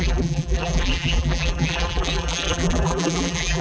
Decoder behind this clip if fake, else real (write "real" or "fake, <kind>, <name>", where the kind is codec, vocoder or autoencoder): fake, vocoder, BigVGAN v2